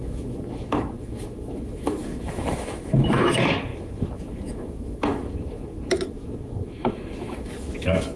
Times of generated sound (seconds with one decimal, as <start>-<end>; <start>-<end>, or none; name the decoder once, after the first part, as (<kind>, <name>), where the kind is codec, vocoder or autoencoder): 0.0-8.2 (autoencoder, DAC-VAE)